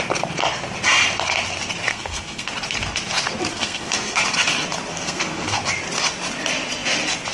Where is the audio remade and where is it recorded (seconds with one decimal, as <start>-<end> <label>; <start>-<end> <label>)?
0.0-1.9 recorded; 1.9-2.5 remade; 2.5-3.5 recorded; 3.5-4.2 remade; 4.2-4.9 recorded; 4.9-5.6 remade; 5.6-7.3 recorded